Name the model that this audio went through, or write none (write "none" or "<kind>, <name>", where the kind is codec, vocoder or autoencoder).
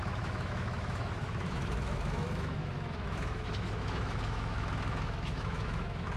autoencoder, DAC-VAE